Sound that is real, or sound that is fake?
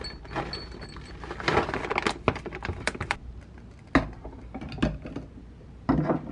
real